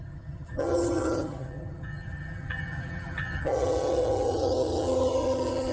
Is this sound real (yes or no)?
no